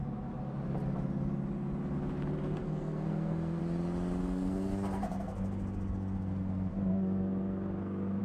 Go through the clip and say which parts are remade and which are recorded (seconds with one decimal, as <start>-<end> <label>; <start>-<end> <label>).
0.0-2.4 recorded; 2.4-3.6 remade; 3.6-4.2 recorded; 4.2-8.2 remade